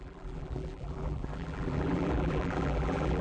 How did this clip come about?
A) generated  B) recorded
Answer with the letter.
A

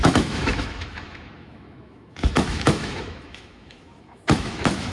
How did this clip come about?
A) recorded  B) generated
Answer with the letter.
B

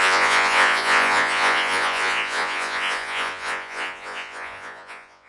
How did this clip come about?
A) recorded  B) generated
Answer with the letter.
B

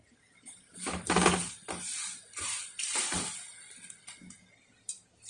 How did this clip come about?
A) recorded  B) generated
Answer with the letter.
A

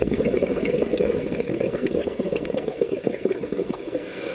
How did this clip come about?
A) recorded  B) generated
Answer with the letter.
B